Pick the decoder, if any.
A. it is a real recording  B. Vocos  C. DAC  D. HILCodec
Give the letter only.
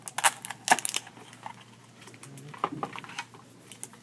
A